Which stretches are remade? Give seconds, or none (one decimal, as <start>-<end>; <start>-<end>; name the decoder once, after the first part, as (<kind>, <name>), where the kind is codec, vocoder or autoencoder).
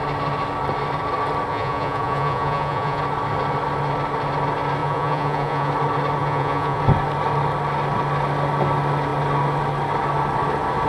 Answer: 1.5-3.0 (vocoder, Vocos); 4.8-5.7; 6.2-6.8